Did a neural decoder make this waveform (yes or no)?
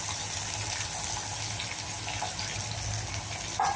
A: no